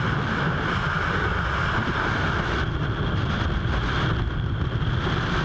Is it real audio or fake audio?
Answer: real